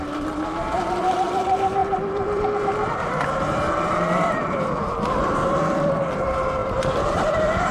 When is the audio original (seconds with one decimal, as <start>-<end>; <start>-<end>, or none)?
none